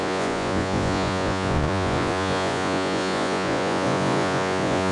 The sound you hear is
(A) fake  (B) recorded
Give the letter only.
A